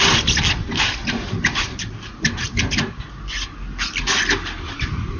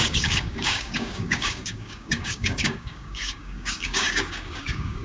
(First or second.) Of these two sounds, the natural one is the first